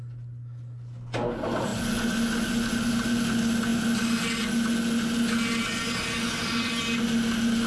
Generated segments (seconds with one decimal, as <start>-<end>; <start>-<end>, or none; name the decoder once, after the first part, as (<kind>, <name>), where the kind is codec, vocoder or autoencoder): none